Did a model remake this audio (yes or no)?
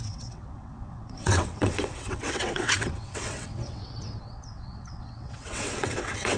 yes